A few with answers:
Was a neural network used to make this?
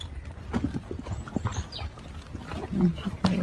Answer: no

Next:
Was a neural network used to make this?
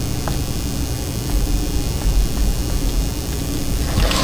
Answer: no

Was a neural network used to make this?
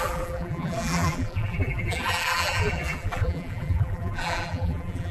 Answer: yes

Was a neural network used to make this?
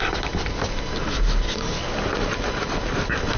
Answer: no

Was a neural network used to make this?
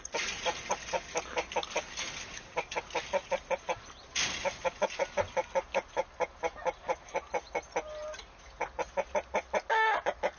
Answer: no